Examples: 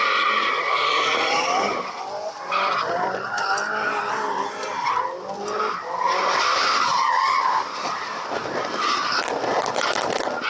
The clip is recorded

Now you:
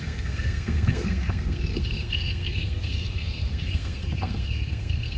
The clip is remade